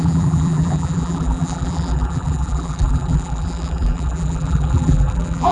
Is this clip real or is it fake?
fake